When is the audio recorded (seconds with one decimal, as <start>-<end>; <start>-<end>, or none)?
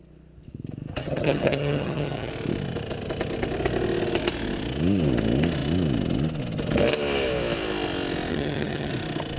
0.0-1.0; 2.3-8.3; 8.9-9.4